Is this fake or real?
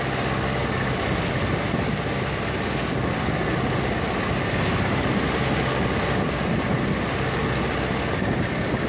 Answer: real